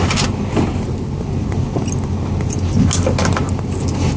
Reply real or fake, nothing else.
real